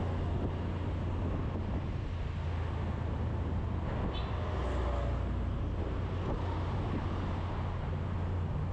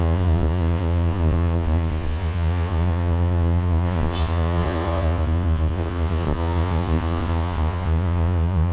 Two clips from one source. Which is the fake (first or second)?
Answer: second